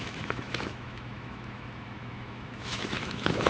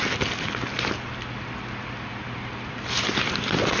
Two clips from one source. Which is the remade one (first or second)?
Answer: first